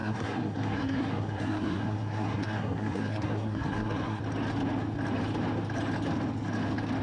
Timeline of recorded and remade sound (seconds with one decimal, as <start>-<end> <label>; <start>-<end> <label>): 0.0-4.2 remade; 4.2-7.0 recorded